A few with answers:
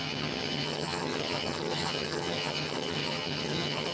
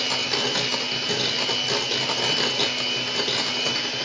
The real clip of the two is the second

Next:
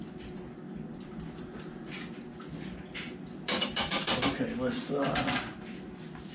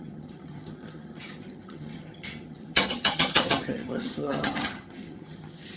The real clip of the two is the first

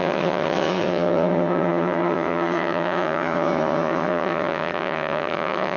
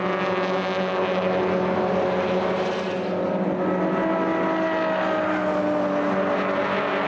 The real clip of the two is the second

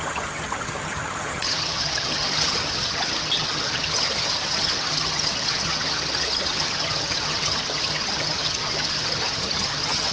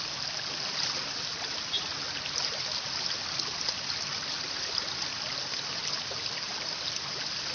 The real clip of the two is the second